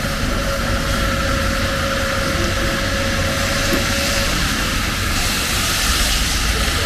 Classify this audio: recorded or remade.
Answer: recorded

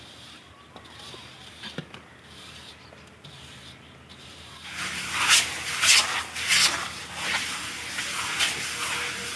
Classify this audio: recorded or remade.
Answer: recorded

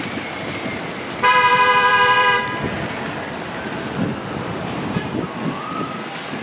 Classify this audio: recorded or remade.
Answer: remade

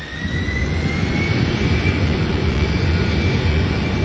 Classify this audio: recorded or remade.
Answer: remade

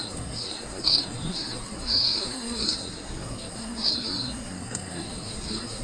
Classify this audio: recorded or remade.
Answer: remade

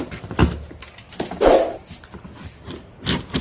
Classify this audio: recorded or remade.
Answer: recorded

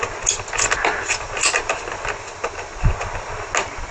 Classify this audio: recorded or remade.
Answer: recorded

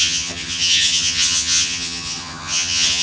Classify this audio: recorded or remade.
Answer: remade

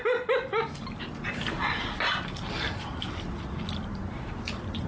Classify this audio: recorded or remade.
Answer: recorded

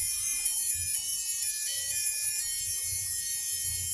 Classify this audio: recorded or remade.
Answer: remade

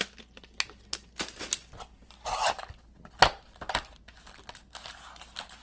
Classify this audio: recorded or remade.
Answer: recorded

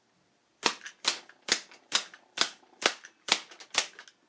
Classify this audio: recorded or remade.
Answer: recorded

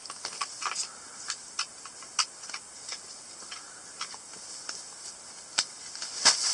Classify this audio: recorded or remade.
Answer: recorded